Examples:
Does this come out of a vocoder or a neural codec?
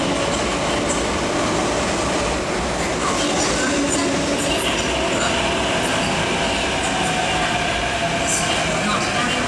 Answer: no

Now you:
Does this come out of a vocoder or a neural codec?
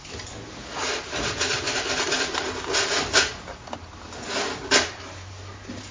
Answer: no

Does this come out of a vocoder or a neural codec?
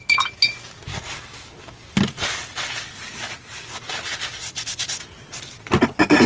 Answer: no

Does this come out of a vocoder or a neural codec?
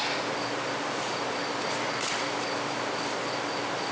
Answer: no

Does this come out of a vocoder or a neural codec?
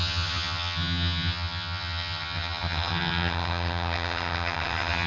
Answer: yes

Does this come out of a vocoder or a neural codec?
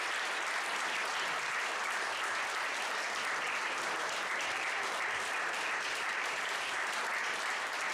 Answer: yes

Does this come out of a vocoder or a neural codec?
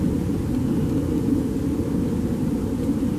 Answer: no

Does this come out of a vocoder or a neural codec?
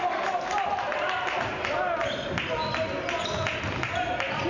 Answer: no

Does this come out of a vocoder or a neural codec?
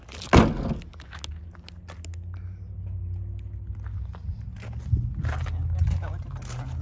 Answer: no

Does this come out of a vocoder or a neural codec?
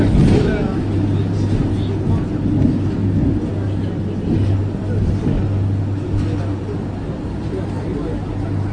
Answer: no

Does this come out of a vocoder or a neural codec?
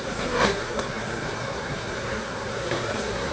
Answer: yes